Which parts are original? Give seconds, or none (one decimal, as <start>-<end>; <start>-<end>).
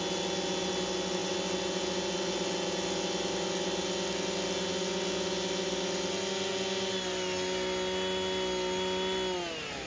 0.0-9.9